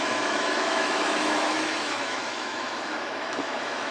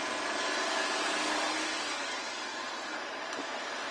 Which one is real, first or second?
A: second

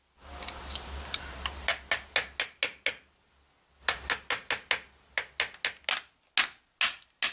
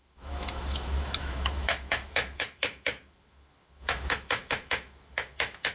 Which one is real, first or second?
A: first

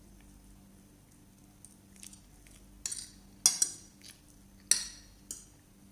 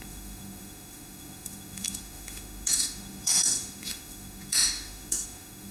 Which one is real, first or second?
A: first